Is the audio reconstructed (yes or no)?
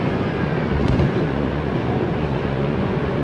yes